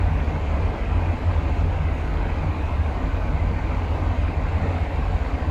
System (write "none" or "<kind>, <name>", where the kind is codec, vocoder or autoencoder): codec, DAC